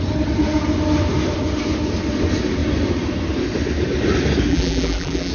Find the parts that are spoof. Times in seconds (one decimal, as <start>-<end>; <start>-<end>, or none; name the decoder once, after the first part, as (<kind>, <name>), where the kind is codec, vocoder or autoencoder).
4.5-5.3 (vocoder, BigVGAN v2)